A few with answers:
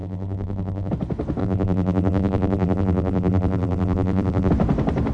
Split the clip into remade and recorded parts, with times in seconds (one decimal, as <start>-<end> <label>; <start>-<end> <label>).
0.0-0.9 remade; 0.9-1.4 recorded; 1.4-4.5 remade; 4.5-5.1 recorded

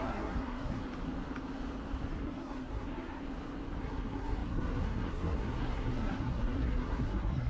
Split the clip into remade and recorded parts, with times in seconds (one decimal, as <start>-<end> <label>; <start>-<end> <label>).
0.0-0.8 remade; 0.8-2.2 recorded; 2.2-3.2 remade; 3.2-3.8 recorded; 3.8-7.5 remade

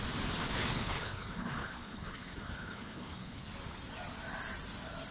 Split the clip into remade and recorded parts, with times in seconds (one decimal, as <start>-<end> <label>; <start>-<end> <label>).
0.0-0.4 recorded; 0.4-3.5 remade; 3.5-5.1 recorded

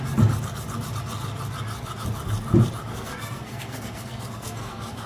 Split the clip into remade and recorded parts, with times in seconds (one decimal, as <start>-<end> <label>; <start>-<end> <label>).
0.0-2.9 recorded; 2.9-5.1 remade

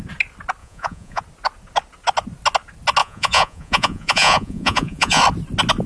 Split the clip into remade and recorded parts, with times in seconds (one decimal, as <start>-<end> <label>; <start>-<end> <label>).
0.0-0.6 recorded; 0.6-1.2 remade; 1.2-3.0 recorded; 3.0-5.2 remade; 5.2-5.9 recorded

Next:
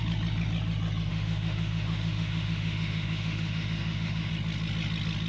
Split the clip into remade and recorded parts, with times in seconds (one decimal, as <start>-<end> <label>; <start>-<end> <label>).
0.0-1.1 recorded; 1.1-4.3 remade; 4.3-5.3 recorded

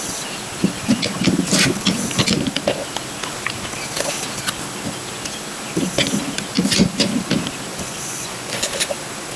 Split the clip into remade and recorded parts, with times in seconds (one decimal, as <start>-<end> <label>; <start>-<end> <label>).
0.0-7.7 recorded; 7.7-8.7 remade; 8.7-9.4 recorded